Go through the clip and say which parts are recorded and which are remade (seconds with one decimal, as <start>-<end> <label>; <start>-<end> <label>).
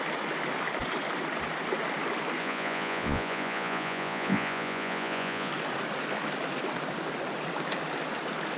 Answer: 0.0-2.4 recorded; 2.4-5.5 remade; 5.5-8.6 recorded